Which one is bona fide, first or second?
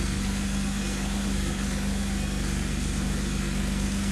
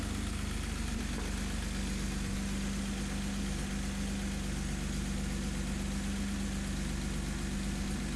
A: second